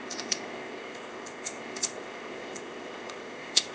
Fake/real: fake